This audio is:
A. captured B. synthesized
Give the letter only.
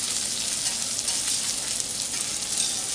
A